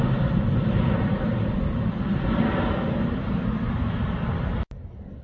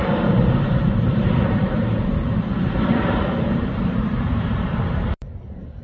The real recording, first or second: first